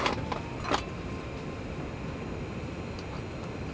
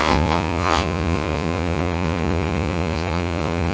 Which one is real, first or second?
first